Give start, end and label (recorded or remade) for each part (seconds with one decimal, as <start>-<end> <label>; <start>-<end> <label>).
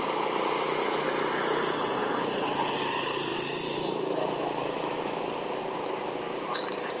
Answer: 0.0-7.0 recorded